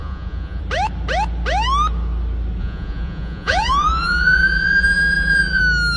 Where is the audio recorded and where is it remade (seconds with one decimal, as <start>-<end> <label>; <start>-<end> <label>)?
0.0-0.6 remade; 0.6-2.6 recorded; 2.6-5.6 remade; 5.6-6.0 recorded